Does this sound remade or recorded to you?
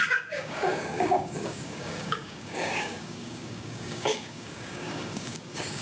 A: remade